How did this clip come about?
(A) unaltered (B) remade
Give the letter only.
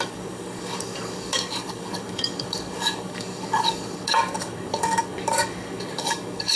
B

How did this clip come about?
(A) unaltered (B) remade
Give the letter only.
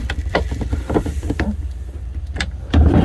B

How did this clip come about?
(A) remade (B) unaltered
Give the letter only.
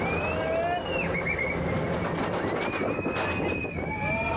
B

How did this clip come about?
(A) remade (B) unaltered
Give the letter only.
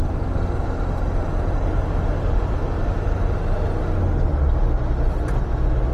B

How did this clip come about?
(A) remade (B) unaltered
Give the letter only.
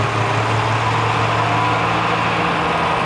B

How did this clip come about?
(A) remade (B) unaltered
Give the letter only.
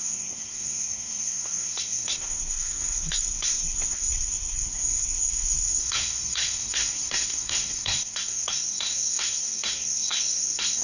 A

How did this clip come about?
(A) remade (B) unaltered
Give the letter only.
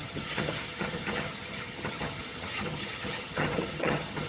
A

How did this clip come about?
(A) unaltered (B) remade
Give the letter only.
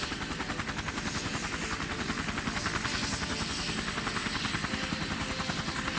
A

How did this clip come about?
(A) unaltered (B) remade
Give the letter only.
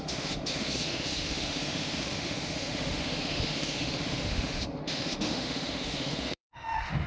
B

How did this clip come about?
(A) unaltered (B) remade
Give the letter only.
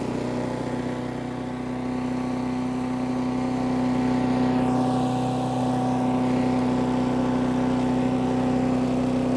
A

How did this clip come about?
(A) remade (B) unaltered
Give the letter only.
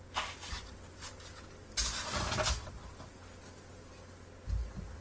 B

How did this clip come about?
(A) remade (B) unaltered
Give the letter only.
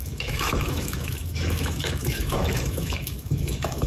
A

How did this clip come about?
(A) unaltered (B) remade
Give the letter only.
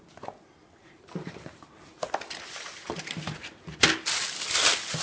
A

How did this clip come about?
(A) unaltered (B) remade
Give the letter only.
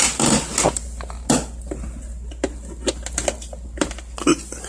A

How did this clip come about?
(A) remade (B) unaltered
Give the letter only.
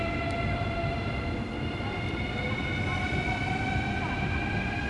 B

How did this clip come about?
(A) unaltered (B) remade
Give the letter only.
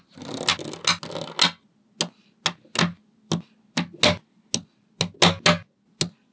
A